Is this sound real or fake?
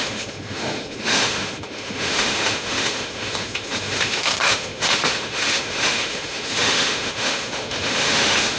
fake